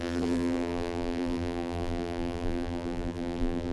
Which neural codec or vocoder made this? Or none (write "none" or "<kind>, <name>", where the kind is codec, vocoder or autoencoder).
vocoder, BigVGAN v2